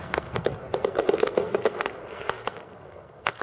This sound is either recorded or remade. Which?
remade